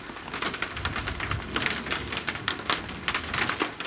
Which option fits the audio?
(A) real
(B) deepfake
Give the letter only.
A